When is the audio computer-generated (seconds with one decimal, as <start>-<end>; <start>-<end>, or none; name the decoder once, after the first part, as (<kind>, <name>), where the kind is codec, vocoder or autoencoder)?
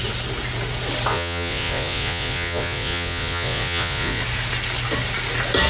1.1-4.2 (vocoder, Vocos)